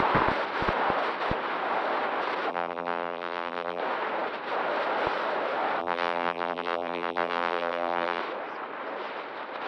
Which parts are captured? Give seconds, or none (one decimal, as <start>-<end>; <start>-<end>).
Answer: 0.0-2.5; 3.8-5.8; 8.2-9.7